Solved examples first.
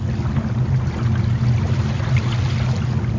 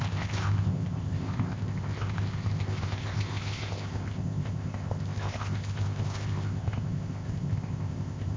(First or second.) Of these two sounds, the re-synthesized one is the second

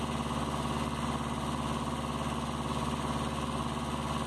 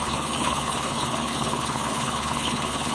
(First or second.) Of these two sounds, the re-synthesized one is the second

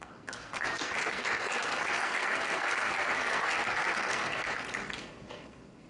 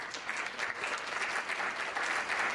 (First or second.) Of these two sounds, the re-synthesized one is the first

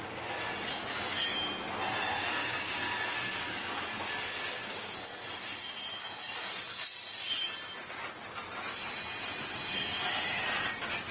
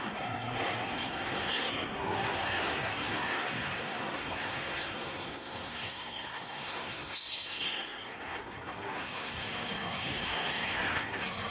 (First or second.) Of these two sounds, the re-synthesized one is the second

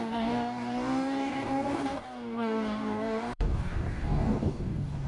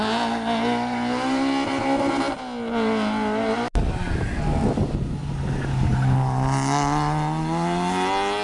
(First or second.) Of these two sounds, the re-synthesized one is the first